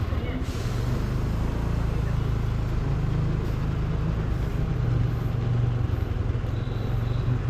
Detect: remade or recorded recorded